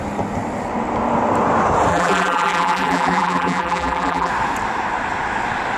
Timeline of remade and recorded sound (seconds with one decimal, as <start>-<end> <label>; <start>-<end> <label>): 0.0-1.9 recorded; 1.9-4.3 remade; 4.3-5.8 recorded